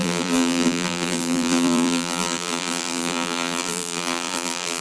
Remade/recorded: remade